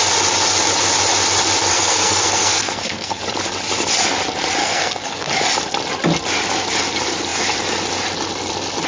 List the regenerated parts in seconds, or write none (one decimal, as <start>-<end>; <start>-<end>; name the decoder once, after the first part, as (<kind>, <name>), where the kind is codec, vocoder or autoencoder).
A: 1.7-3.2 (codec, SNAC); 4.6-5.3